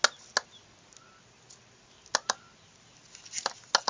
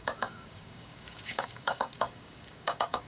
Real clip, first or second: first